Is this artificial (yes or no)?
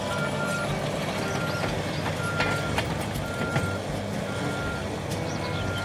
no